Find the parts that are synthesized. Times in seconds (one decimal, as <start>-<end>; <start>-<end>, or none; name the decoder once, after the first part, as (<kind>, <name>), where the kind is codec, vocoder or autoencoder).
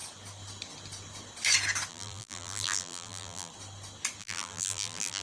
1.9-3.5 (vocoder, BigVGAN v2); 4.2-5.2